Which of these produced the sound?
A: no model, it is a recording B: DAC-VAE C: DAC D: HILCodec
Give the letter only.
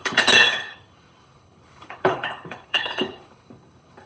D